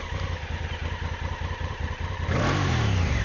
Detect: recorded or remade remade